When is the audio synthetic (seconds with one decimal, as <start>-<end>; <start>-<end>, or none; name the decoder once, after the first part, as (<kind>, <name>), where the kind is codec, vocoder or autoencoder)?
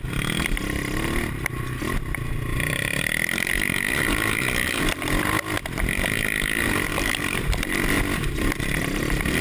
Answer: 2.5-3.0 (vocoder, BigVGAN v2); 3.7-8.6